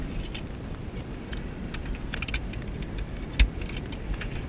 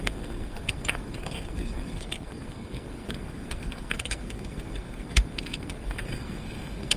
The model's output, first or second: second